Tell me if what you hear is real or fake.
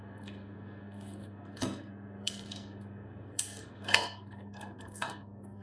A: fake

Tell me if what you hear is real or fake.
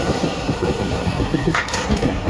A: fake